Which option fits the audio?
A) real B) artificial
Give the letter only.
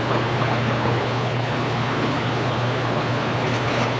B